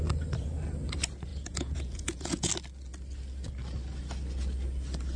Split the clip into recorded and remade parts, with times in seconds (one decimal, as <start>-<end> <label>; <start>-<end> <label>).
0.0-1.3 recorded; 1.3-2.5 remade; 2.5-5.2 recorded